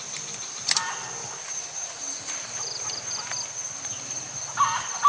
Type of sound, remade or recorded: recorded